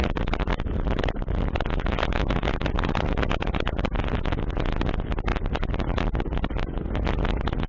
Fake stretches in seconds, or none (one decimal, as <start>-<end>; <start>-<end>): 0.0-4.5; 5.3-6.9